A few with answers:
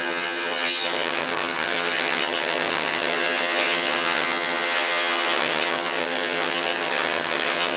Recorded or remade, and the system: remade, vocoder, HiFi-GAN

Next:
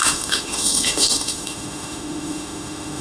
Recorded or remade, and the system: remade, autoencoder, DAC-VAE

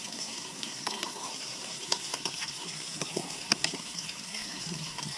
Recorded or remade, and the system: remade, codec, SNAC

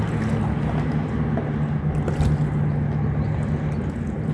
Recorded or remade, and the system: recorded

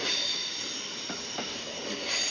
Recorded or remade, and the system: recorded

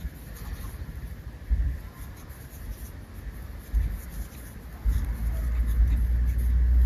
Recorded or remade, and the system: recorded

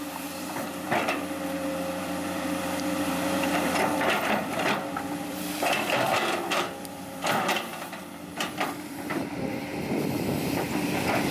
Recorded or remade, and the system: remade, vocoder, BigVGAN v2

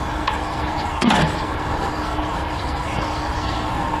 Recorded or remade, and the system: remade, codec, SNAC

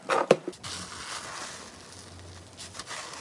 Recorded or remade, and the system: recorded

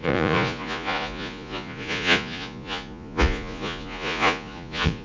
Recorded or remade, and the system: remade, vocoder, Vocos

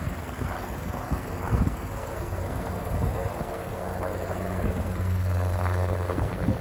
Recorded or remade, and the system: remade, codec, SNAC